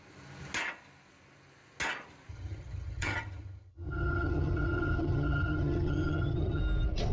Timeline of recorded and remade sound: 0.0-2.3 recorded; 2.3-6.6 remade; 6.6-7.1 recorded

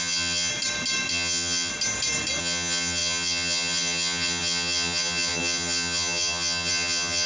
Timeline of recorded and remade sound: 0.0-0.5 remade; 0.5-1.1 recorded; 1.1-1.7 remade; 1.7-2.4 recorded; 2.4-7.3 remade

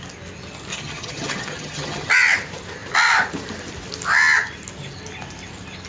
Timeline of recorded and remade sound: 0.0-0.7 recorded; 0.7-2.1 remade; 2.1-5.9 recorded

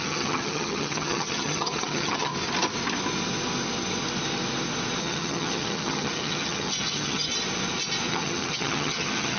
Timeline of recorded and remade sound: 0.0-2.3 remade; 2.3-5.0 recorded; 5.0-7.3 remade; 7.3-8.1 recorded; 8.1-9.4 remade